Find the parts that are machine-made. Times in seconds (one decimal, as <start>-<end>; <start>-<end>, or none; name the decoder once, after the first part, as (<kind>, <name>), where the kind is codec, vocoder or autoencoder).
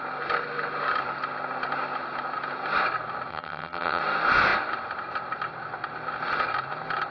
3.3-4.0 (vocoder, HiFi-GAN)